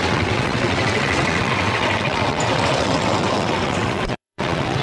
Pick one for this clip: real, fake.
fake